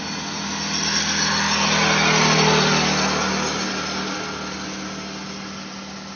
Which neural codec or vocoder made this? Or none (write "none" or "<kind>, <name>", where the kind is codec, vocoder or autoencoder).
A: none